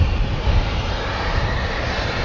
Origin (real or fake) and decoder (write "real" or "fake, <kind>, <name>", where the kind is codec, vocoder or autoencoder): fake, vocoder, BigVGAN v2